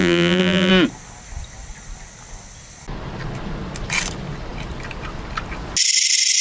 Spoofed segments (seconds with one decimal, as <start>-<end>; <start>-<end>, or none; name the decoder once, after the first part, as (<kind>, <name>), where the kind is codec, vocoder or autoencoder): 0.0-0.7 (vocoder, BigVGAN v2)